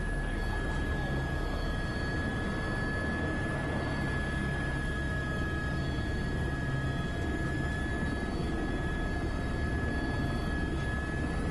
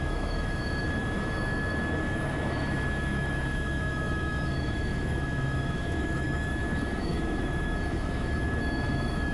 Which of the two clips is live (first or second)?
first